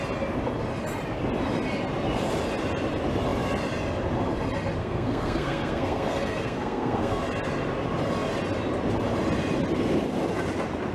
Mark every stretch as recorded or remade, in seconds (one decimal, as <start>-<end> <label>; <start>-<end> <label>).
0.0-4.8 recorded; 4.8-7.2 remade; 7.2-10.9 recorded